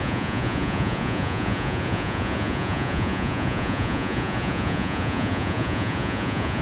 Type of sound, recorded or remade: remade